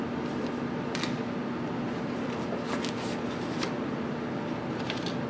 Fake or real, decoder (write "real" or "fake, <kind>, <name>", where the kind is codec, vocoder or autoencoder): real